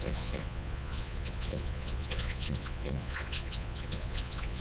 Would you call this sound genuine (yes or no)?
no